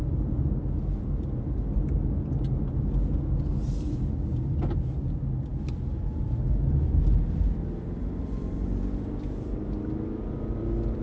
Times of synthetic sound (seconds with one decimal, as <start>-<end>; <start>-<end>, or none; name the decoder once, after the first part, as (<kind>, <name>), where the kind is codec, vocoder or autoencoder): none